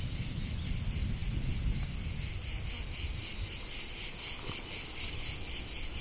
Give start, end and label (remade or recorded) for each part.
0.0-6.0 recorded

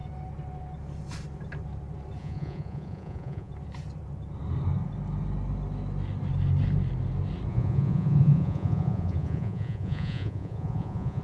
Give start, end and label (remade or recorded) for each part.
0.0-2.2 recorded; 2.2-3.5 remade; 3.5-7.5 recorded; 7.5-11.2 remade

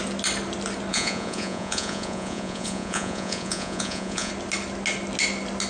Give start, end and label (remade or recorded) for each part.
0.0-0.9 recorded; 0.9-4.3 remade; 4.3-5.7 recorded